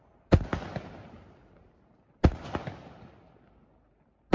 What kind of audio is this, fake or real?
real